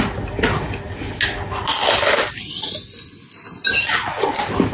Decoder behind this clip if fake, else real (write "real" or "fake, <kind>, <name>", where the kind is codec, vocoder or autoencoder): real